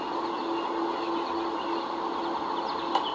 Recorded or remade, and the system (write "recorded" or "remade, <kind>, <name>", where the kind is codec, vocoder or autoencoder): recorded